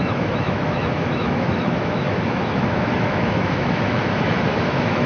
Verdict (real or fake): fake